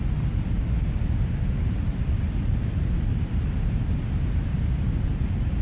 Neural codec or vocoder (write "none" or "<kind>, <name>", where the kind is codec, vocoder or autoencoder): vocoder, BigVGAN v2